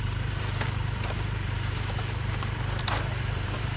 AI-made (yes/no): yes